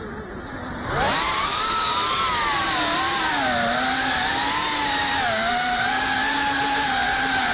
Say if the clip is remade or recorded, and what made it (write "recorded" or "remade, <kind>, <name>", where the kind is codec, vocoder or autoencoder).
recorded